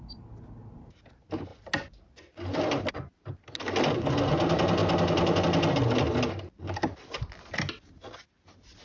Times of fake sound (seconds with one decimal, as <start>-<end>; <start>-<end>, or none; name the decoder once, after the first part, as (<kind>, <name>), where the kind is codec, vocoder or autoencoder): none